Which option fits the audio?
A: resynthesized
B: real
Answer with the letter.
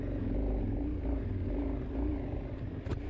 B